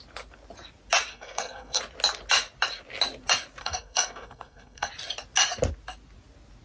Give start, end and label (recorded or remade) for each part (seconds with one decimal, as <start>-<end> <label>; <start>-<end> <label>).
0.0-1.1 recorded; 1.1-1.8 remade; 1.8-3.6 recorded; 3.6-4.9 remade; 4.9-6.6 recorded